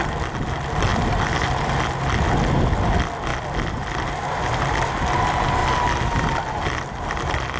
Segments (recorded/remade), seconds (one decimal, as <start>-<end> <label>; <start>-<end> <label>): 0.0-7.6 recorded